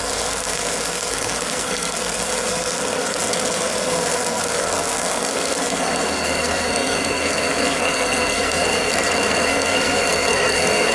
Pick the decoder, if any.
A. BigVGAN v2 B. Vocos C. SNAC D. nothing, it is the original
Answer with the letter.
C